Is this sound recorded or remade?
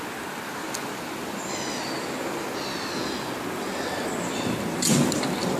recorded